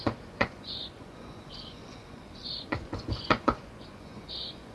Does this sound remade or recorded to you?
remade